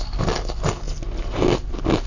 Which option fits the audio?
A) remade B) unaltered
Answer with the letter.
B